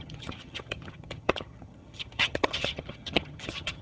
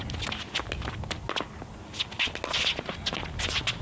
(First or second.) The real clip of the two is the second